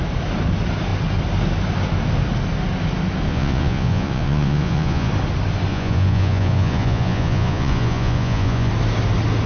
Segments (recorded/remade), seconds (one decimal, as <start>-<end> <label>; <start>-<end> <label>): 0.0-3.3 recorded; 3.3-5.1 remade; 5.1-5.7 recorded; 5.7-8.7 remade; 8.7-9.5 recorded